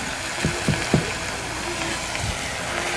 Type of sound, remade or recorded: recorded